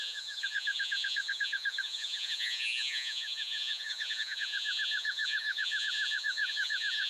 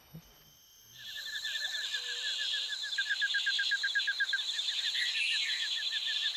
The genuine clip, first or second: second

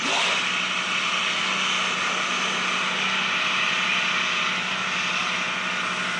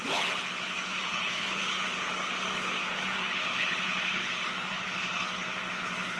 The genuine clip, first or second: first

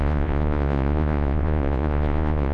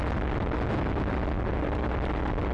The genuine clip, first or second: second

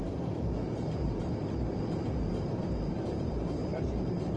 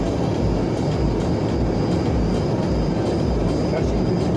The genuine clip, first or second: second